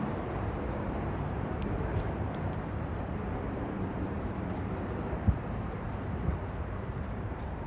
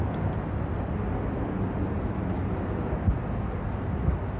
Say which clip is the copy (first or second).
first